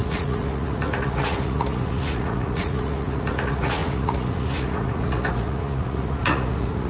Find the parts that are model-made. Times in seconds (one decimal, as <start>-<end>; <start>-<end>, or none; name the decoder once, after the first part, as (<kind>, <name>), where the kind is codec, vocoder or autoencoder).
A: 0.0-6.9 (vocoder, Vocos)